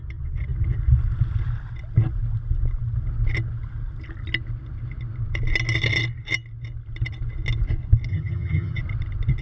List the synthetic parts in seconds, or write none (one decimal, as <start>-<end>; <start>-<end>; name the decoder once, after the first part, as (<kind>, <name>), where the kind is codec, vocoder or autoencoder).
8.1-8.8 (vocoder, HiFi-GAN)